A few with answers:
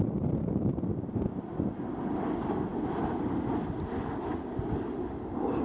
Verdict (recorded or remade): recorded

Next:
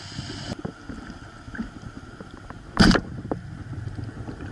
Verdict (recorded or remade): recorded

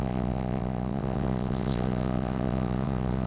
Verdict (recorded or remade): remade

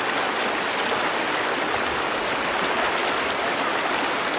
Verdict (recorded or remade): recorded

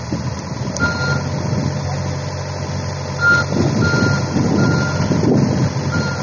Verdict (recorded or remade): recorded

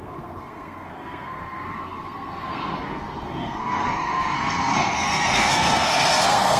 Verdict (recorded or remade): remade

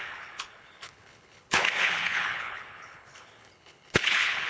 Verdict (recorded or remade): remade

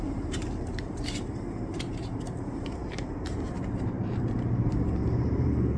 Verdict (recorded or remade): remade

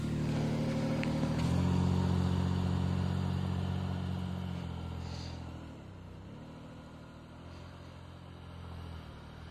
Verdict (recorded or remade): recorded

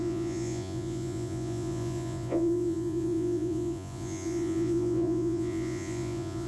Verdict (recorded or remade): remade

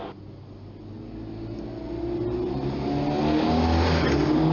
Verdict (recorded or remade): recorded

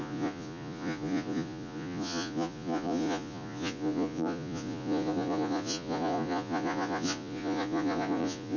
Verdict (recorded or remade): remade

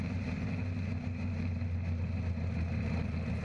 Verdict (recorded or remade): recorded